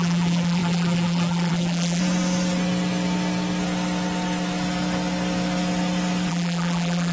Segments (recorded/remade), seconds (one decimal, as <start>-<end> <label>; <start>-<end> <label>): 0.0-2.0 remade; 2.0-6.3 recorded; 6.3-7.1 remade